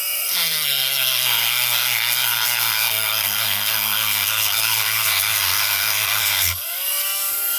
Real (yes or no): no